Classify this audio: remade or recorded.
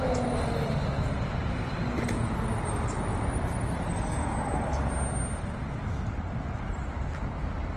recorded